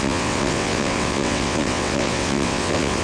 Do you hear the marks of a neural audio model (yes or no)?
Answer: yes